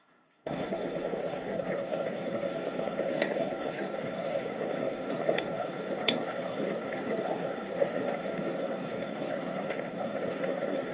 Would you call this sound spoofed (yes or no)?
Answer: yes